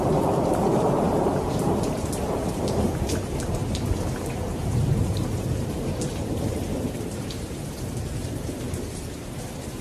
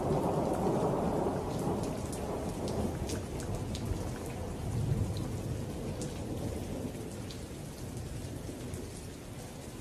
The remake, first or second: first